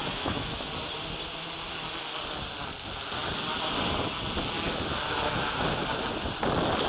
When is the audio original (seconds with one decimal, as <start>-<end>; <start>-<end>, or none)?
0.7-6.9